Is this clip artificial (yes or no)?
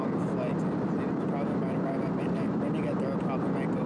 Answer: no